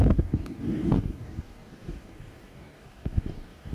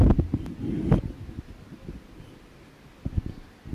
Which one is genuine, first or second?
second